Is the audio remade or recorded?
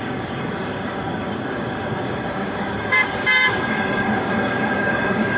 remade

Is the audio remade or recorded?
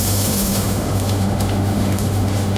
remade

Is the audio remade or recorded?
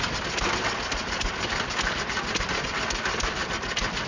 recorded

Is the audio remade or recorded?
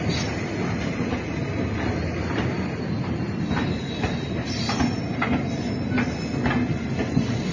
recorded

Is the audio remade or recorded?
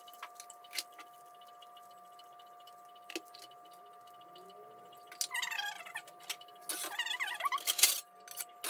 recorded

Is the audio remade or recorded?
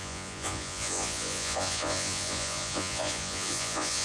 remade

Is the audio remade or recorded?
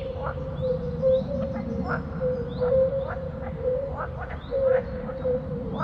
remade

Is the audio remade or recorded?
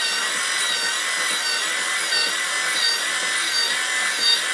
recorded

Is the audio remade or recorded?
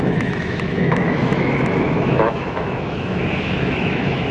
remade